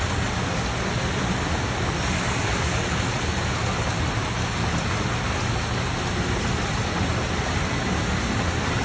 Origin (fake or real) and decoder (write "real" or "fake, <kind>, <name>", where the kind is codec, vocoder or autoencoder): real